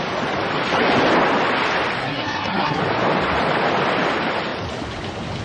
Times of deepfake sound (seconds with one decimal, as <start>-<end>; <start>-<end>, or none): 2.0-2.8